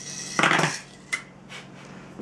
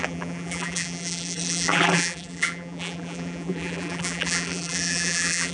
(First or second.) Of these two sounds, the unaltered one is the first